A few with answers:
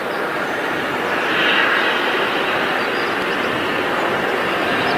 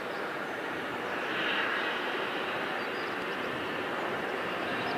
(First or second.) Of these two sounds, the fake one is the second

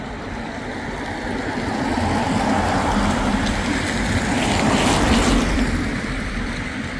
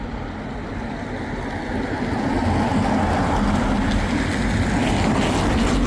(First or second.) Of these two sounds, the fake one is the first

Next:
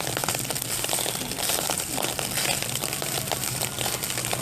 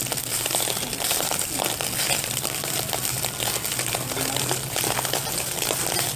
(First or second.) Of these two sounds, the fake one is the first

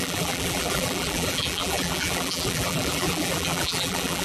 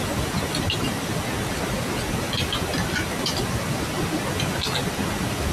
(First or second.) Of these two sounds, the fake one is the first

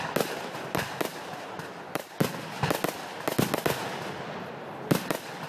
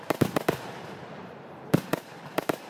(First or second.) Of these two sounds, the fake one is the second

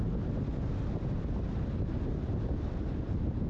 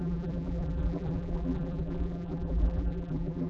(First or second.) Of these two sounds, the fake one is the second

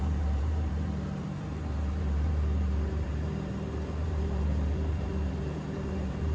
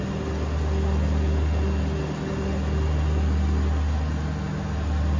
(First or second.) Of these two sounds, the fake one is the first